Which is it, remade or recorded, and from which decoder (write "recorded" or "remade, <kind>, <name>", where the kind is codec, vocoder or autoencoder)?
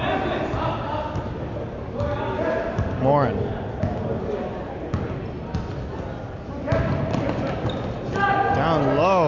recorded